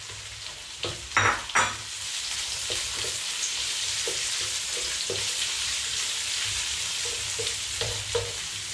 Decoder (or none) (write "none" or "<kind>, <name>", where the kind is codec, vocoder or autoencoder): vocoder, BigVGAN v2